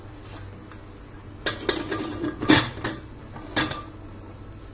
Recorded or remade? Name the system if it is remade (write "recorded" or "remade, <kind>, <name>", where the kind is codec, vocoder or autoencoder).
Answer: recorded